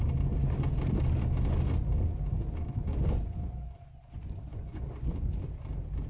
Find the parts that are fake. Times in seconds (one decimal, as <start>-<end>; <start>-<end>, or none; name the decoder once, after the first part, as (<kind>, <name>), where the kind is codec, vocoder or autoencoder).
2.9-5.3 (vocoder, Vocos)